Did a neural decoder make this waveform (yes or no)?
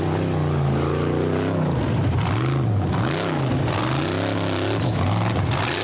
no